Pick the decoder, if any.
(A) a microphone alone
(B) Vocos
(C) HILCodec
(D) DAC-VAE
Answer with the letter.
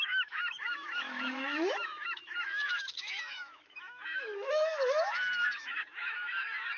D